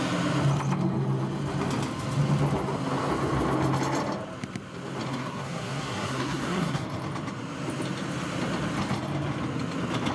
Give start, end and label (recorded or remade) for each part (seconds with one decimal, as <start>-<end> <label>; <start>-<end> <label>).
0.0-5.1 recorded; 5.1-6.8 remade; 6.8-10.1 recorded